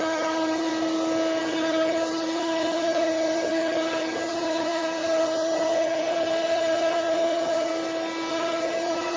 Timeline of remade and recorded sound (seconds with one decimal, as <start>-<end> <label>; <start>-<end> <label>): 0.0-0.7 remade; 0.7-1.4 recorded; 1.4-7.7 remade; 7.7-8.3 recorded; 8.3-9.2 remade